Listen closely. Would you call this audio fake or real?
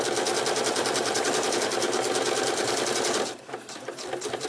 fake